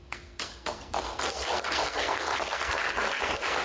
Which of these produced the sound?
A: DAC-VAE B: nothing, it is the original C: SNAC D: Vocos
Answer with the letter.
C